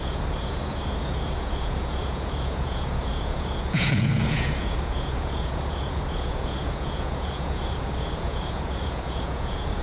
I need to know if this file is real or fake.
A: fake